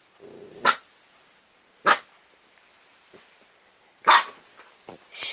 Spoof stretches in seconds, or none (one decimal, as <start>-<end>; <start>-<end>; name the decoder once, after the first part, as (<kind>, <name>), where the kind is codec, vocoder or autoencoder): none